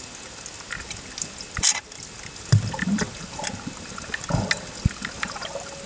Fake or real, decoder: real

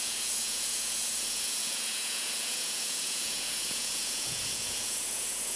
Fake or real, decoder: fake, vocoder, Vocos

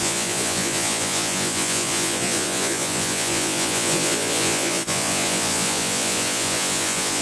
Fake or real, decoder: fake, vocoder, Vocos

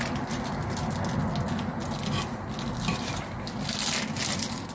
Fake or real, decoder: real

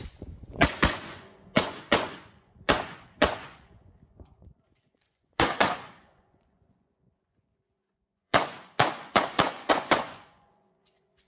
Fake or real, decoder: fake, vocoder, Vocos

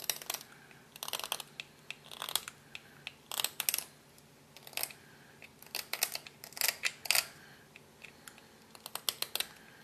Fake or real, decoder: real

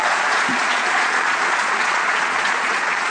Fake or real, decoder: fake, vocoder, Vocos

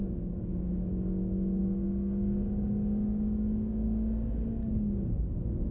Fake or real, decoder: fake, codec, DAC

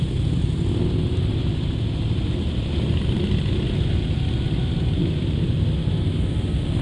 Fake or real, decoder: real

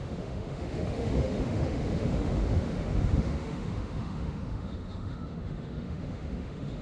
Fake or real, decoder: fake, autoencoder, DAC-VAE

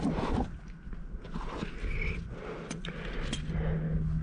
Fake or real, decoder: real